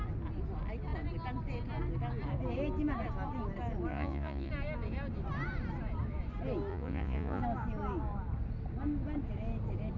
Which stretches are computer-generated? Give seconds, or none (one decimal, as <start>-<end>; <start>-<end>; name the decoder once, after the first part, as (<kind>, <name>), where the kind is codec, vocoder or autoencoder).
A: 3.9-4.5 (vocoder, Vocos); 6.7-7.4